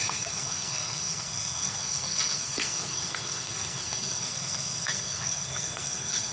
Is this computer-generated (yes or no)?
yes